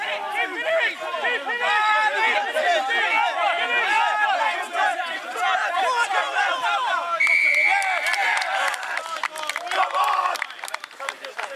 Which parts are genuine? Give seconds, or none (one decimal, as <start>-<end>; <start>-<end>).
0.0-6.2; 8.6-11.6